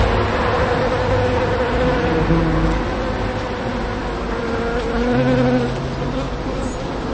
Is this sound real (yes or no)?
yes